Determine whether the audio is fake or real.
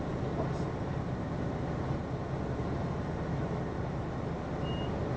real